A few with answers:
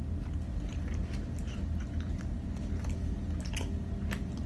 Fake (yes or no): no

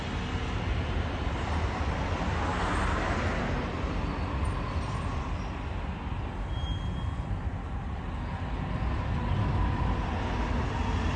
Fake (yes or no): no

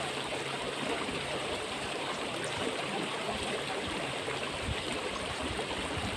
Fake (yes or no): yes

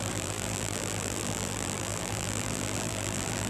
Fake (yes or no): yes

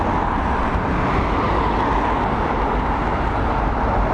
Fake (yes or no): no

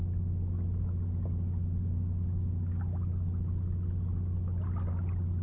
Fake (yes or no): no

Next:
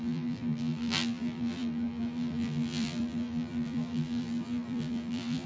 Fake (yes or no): yes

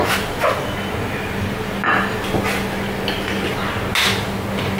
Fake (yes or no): no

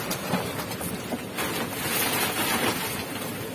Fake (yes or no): no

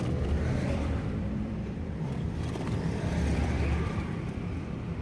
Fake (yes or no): yes